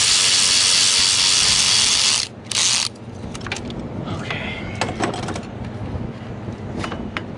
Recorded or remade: recorded